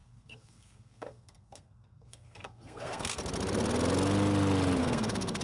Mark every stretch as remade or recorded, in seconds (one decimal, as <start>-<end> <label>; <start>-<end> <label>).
0.0-3.2 remade; 3.2-4.8 recorded; 4.8-5.4 remade